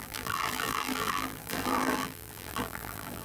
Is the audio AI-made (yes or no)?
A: yes